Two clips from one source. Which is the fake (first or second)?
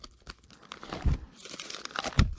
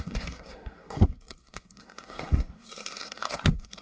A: second